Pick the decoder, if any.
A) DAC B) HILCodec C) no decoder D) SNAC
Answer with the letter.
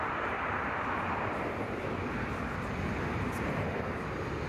C